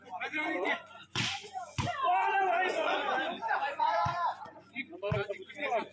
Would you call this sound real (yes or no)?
no